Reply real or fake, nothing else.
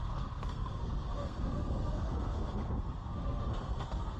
fake